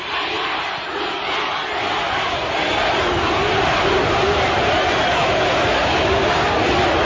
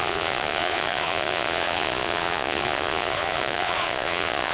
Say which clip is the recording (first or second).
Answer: first